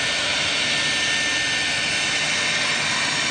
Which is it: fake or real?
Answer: real